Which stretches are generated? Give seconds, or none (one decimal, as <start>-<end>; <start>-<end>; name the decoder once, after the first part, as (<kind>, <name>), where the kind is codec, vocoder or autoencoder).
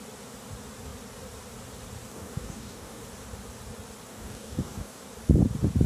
2.1-3.0 (codec, DAC); 4.1-5.0